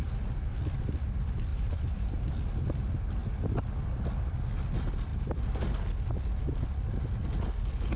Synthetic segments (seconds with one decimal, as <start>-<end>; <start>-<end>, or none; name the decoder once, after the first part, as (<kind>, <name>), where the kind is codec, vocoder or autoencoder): 1.5-2.3 (vocoder, BigVGAN v2); 5.1-5.6